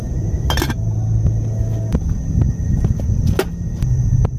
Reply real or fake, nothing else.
real